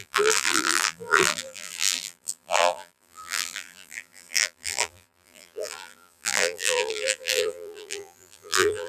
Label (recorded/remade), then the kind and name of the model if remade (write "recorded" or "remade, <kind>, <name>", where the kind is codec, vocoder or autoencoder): remade, vocoder, BigVGAN v2